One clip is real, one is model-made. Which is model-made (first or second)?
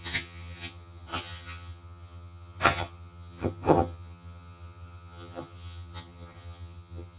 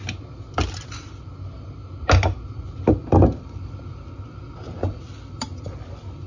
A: first